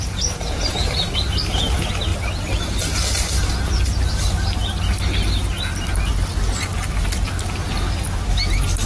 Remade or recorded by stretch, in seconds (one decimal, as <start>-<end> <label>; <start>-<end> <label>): 0.0-8.9 recorded